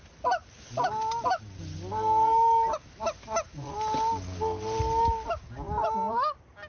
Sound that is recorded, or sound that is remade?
recorded